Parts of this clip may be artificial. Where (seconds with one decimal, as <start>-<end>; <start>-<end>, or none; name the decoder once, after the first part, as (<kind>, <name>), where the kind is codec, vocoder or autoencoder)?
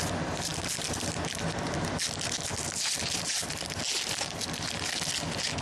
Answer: none